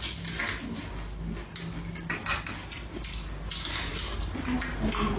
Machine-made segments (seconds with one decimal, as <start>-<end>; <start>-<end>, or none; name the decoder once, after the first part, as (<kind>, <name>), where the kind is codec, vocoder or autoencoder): none